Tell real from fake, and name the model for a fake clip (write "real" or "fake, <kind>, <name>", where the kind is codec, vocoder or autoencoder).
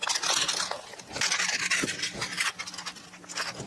real